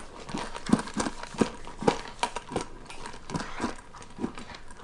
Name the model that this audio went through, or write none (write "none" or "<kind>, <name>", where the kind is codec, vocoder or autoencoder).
none